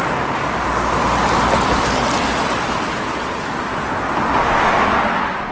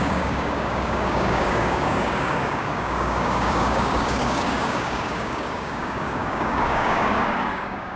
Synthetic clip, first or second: second